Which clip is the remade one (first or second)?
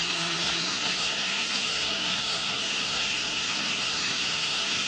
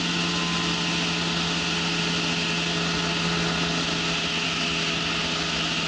first